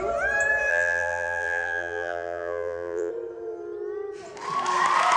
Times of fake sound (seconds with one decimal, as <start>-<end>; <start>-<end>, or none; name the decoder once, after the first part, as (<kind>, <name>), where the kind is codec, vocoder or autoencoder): 0.7-3.1 (vocoder, BigVGAN v2)